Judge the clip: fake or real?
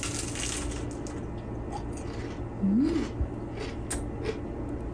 real